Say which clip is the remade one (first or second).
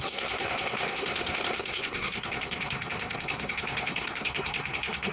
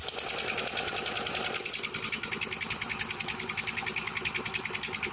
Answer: first